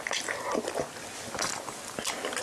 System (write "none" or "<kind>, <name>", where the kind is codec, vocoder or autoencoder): none